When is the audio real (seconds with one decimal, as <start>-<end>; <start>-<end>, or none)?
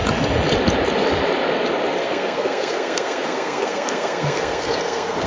0.0-2.0